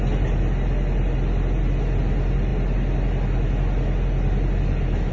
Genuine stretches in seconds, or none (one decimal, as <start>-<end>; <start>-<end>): 0.0-5.1